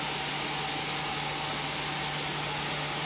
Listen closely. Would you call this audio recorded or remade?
recorded